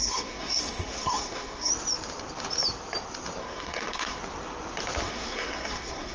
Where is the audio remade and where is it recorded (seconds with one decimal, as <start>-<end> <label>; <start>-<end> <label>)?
0.0-1.7 remade; 1.7-3.4 recorded; 3.4-4.2 remade; 4.2-5.0 recorded; 5.0-6.1 remade